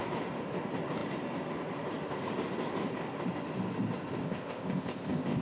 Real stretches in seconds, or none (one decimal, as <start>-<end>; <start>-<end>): 0.0-4.2